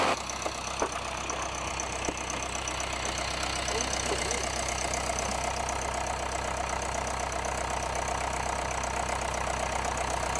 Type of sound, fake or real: real